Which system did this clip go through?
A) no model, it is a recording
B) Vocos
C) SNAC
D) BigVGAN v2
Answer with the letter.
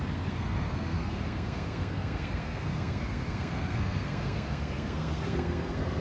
C